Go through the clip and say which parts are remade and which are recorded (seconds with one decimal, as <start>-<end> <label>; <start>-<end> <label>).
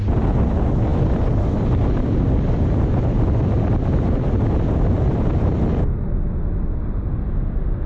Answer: 0.0-7.9 recorded